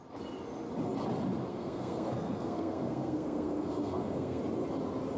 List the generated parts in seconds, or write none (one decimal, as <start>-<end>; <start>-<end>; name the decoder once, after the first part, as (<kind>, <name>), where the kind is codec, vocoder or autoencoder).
1.5-4.4 (codec, SNAC)